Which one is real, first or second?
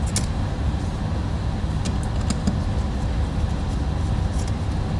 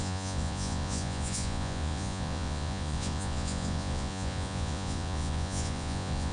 first